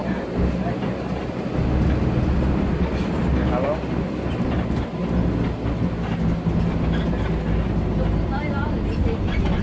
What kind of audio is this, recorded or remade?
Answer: recorded